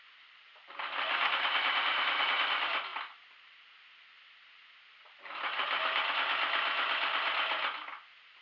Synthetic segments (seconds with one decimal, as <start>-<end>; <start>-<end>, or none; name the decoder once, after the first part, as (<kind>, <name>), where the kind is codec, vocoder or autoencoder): none